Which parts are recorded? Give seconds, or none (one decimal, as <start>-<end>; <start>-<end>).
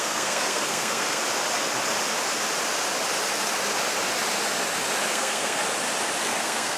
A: 1.2-5.1; 5.6-6.2